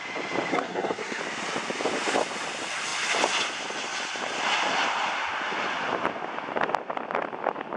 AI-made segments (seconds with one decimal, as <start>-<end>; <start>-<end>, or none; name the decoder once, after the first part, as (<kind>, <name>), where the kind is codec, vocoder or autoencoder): 0.5-1.2 (codec, SNAC)